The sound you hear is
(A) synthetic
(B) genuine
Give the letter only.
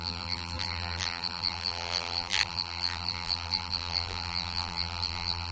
A